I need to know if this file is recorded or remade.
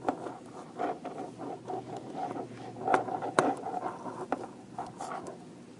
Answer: recorded